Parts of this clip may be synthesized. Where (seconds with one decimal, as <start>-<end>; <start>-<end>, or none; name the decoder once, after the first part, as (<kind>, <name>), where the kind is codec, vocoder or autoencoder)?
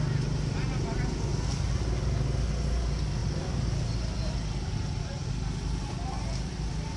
none